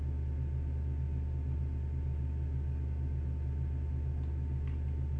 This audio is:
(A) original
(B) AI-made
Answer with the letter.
A